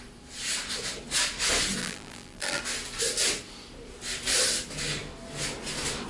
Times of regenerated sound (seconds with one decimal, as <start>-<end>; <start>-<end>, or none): 1.8-2.6